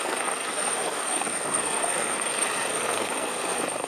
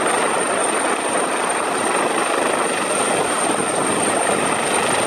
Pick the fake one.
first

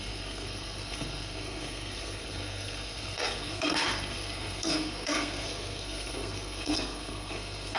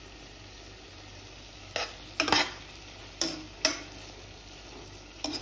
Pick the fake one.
first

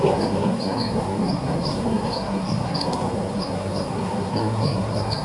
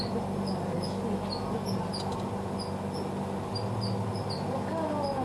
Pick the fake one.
first